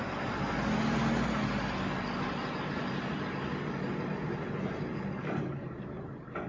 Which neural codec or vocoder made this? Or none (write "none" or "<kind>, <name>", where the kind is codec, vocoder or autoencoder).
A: none